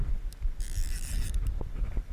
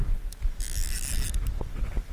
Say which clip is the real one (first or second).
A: second